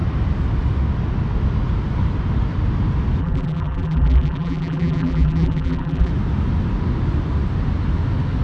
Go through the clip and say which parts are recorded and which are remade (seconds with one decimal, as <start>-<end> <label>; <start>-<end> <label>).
0.0-3.2 recorded; 3.2-6.1 remade; 6.1-8.4 recorded